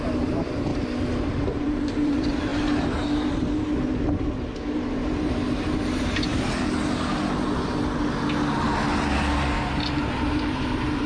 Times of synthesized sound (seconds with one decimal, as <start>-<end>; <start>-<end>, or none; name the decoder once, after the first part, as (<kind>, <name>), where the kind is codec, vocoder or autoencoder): 0.0-0.7 (vocoder, BigVGAN v2); 1.3-6.3; 9.9-11.1